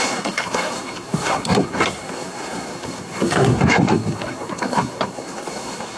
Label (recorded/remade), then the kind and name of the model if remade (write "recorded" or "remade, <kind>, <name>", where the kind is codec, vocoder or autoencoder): remade, codec, SNAC